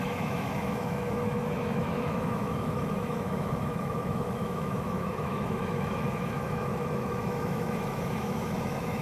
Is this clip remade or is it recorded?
remade